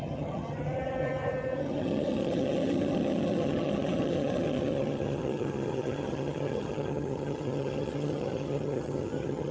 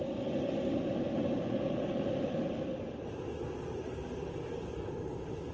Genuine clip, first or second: second